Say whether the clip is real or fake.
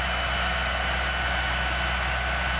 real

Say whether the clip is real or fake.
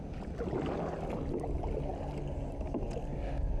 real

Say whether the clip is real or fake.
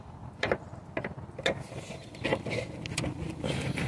real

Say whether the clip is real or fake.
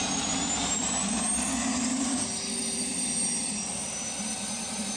real